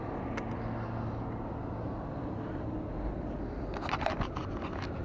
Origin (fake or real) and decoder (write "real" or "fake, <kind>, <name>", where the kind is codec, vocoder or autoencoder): real